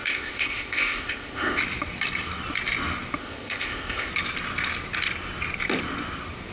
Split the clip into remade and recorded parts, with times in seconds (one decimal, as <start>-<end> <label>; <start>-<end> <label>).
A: 0.0-1.6 remade; 1.6-3.2 recorded; 3.2-4.1 remade; 4.1-6.5 recorded